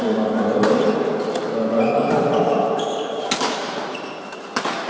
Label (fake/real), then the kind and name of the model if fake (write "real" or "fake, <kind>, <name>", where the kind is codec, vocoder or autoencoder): real